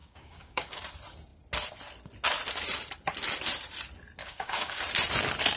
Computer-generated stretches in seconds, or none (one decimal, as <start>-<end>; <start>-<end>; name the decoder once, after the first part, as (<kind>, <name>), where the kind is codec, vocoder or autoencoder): 0.0-0.8 (codec, DAC); 4.2-4.8

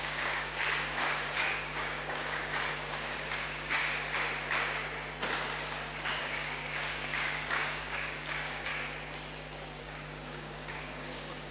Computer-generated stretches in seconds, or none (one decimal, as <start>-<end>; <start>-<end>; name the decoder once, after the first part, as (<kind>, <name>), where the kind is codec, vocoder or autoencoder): 0.0-3.8 (codec, DAC); 6.2-8.7; 9.8-11.5

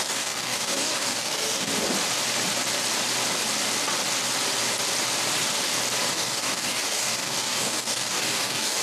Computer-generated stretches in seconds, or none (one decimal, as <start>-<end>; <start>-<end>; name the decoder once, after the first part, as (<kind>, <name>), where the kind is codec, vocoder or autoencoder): 0.0-1.7 (codec, DAC); 6.1-8.8